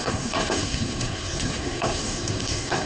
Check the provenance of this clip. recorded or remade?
remade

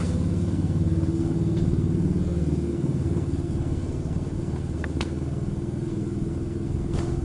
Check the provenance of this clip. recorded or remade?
remade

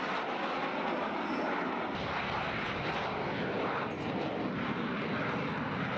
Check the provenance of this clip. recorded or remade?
recorded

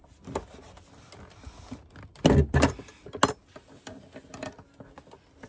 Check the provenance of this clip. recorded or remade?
recorded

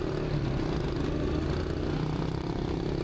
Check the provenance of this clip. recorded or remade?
recorded